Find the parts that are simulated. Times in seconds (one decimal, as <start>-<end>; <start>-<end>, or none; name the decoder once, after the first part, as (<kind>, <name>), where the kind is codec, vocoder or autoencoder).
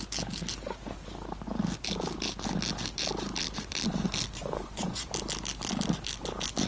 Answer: 4.4-5.1 (vocoder, Vocos)